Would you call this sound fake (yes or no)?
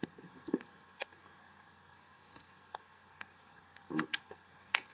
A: yes